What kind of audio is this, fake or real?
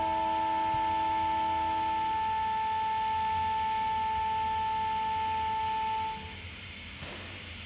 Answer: real